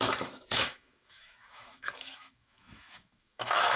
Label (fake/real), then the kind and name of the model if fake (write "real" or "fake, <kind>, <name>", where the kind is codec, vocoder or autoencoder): fake, autoencoder, DAC-VAE